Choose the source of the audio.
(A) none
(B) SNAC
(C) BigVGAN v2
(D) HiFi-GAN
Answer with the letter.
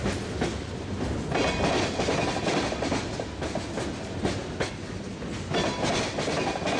A